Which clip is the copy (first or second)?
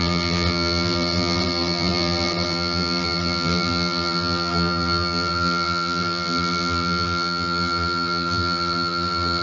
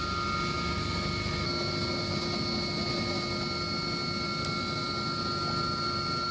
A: first